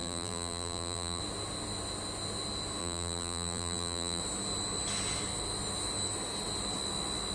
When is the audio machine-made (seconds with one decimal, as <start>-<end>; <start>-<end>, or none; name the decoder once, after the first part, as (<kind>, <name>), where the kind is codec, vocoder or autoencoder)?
0.0-1.2 (vocoder, BigVGAN v2); 2.8-4.2